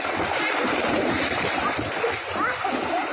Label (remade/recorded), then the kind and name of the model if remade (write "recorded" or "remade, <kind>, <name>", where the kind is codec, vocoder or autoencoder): remade, vocoder, BigVGAN v2